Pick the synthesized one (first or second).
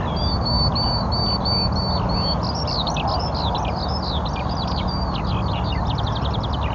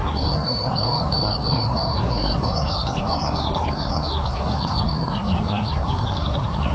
second